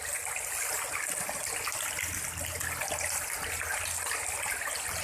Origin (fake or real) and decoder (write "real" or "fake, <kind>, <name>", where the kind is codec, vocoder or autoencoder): real